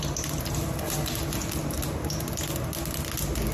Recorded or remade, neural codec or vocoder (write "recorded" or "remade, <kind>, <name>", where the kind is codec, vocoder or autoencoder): recorded